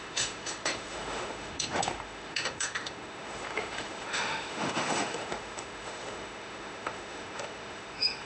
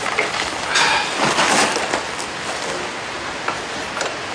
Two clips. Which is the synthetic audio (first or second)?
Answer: first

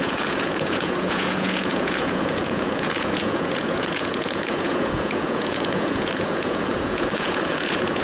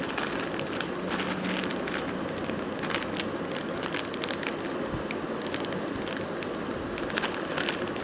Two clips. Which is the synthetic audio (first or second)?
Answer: first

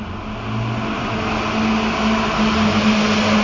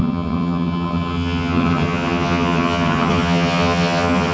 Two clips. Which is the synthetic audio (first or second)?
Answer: second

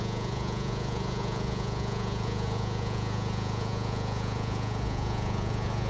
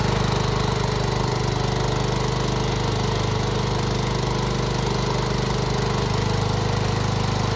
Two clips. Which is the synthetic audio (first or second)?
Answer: first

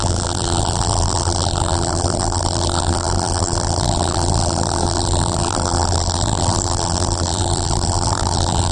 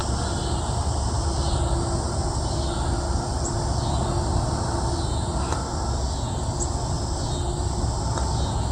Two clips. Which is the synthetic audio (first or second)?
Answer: first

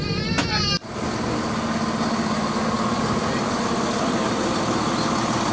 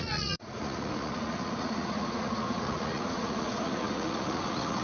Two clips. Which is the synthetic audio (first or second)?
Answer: second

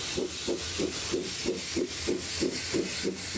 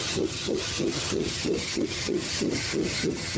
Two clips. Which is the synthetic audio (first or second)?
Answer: second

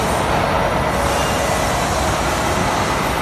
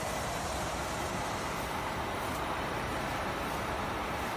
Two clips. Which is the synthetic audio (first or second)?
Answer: second